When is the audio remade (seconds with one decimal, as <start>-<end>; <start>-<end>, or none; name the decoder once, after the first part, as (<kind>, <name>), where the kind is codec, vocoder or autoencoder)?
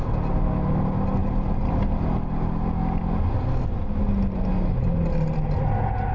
none